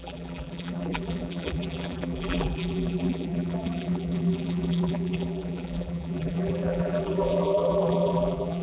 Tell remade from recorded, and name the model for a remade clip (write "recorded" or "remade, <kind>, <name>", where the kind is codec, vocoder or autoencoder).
remade, vocoder, BigVGAN v2